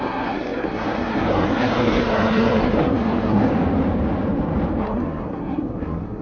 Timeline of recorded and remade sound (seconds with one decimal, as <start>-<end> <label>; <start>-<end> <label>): 0.0-3.5 remade; 3.5-4.8 recorded; 4.8-6.2 remade